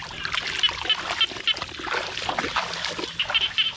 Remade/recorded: recorded